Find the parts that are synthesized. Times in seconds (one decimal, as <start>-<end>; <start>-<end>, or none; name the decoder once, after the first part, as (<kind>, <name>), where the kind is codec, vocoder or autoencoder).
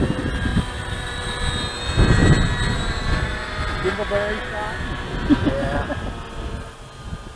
0.5-1.3 (vocoder, BigVGAN v2)